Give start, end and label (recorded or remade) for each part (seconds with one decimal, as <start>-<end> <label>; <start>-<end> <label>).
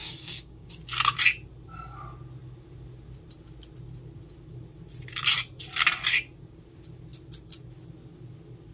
0.0-0.7 remade; 0.7-8.7 recorded